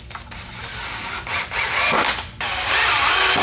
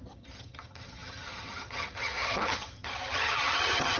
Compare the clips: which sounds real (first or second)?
first